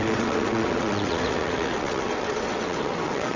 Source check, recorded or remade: remade